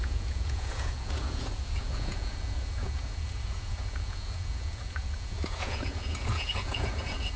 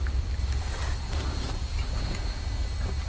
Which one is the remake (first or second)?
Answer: first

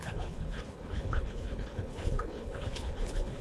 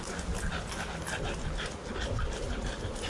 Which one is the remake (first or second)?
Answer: first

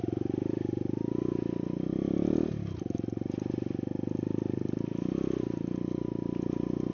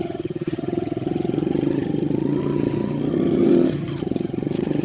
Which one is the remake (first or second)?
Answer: second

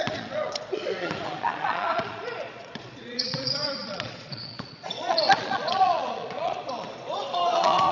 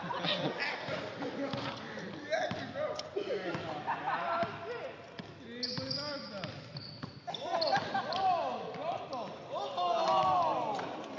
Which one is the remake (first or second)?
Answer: first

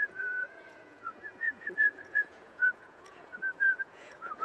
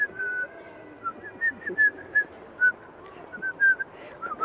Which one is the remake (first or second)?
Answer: first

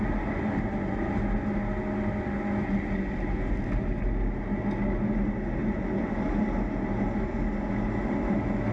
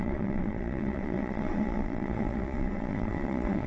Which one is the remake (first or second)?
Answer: second